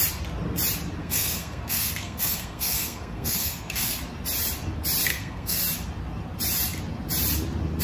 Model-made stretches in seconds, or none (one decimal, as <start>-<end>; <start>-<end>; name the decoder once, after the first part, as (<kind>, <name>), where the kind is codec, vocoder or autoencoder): 1.0-4.0 (codec, SNAC); 5.1-5.6